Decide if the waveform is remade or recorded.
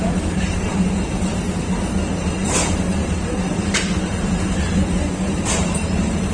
remade